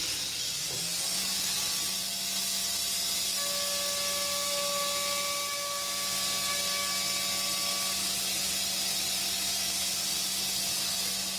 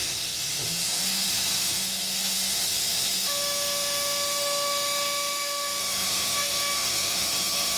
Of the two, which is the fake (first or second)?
second